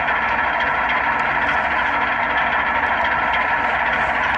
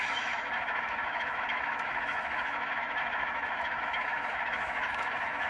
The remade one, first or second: second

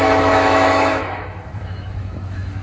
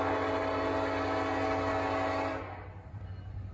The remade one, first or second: first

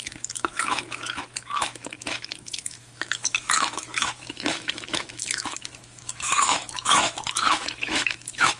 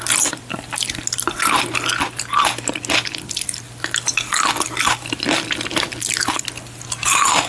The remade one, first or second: first